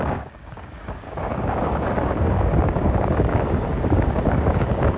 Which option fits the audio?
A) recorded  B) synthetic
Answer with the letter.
B